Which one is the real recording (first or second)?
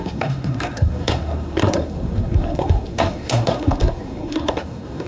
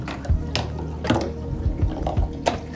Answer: second